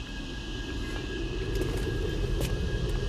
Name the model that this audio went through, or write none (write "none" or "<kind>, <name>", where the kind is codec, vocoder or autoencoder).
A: none